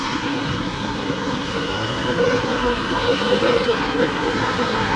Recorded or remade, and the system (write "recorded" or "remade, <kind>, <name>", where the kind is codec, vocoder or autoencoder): remade, codec, SNAC